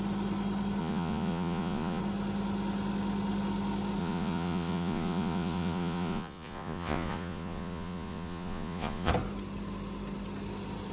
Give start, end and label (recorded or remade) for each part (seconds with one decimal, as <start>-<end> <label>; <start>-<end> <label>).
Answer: 0.0-0.8 recorded; 0.8-2.0 remade; 2.0-4.0 recorded; 4.0-9.1 remade; 9.1-10.9 recorded